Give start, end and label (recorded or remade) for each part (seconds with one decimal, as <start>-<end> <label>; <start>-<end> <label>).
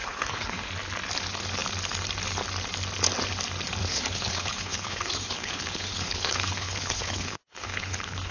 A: 0.0-0.7 remade; 0.7-3.8 recorded; 3.8-8.3 remade